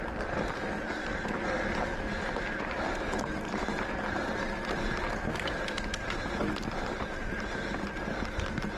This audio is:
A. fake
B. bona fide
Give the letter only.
B